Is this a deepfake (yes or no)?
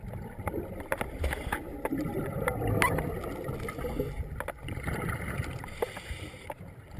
no